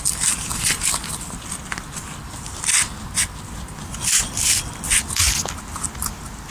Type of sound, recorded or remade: recorded